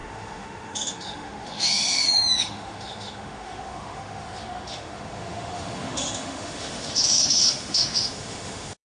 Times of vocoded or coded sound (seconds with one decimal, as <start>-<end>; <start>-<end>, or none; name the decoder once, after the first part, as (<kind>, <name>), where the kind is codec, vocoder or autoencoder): 0.0-8.8 (autoencoder, DAC-VAE)